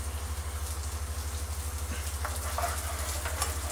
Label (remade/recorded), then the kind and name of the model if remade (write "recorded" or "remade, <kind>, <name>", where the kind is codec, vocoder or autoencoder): recorded